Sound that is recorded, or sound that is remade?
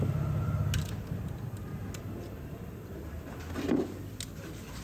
recorded